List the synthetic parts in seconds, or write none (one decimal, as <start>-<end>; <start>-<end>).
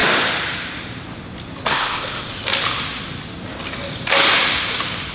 1.7-2.3